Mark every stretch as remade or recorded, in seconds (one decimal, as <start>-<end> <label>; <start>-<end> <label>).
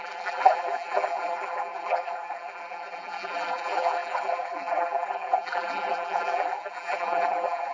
0.0-7.7 remade